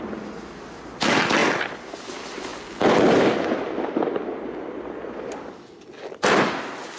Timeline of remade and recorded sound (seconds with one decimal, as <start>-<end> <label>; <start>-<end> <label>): 0.0-7.0 recorded